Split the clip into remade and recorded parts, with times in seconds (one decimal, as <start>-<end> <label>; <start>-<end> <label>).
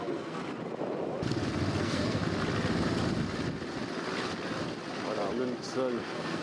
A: 0.0-0.4 remade; 0.4-1.8 recorded; 1.8-2.2 remade; 2.2-6.0 recorded; 6.0-6.4 remade